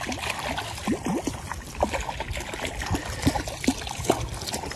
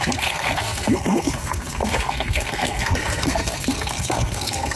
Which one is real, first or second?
first